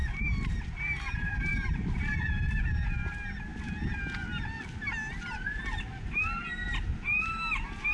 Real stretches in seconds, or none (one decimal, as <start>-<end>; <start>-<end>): 2.2-7.9